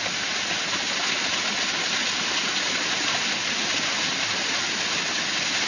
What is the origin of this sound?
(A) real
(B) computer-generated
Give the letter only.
A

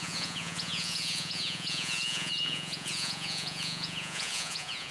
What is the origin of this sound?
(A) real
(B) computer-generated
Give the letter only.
B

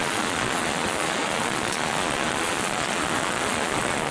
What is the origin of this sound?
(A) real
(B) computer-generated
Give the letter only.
B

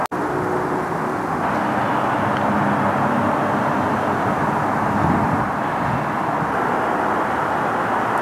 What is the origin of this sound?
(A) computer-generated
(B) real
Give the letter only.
B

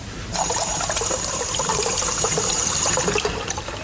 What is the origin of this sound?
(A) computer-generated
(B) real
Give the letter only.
A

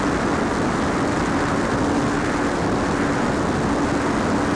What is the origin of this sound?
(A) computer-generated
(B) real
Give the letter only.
B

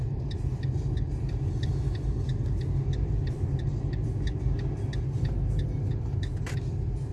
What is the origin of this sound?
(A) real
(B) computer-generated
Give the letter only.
A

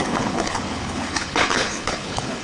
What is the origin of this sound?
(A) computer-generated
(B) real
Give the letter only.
A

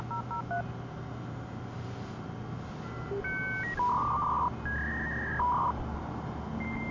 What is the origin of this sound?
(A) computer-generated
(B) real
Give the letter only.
B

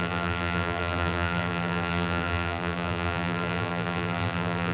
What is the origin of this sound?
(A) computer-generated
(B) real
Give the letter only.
A